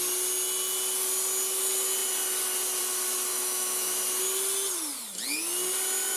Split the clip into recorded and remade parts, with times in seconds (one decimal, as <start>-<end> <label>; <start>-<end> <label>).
0.0-3.3 recorded; 3.3-3.9 remade; 3.9-6.2 recorded

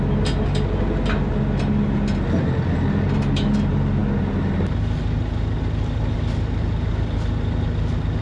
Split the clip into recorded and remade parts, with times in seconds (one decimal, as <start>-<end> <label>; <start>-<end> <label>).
0.0-8.2 recorded